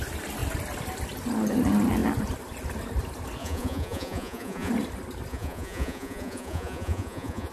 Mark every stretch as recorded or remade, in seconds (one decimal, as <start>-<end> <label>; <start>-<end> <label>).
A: 0.0-3.4 recorded; 3.4-4.7 remade; 4.7-5.3 recorded; 5.3-7.5 remade